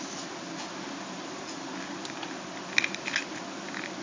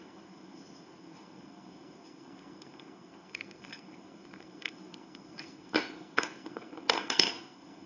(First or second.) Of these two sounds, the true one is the first